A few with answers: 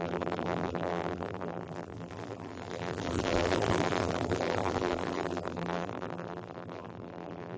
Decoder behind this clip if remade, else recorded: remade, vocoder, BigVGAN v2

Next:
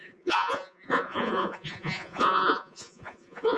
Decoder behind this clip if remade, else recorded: remade, vocoder, Vocos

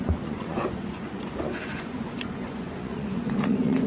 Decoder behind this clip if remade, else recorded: remade, vocoder, Vocos